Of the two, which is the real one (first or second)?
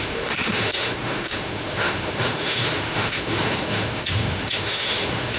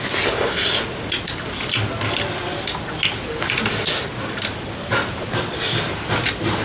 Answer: second